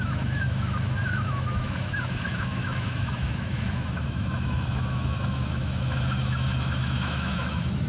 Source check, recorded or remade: remade